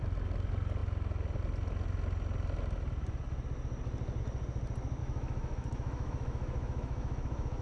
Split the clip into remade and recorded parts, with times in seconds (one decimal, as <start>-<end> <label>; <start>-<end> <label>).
0.0-5.0 recorded; 5.0-7.6 remade